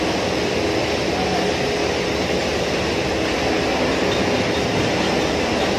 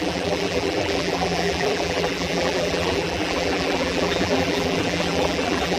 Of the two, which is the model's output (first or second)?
second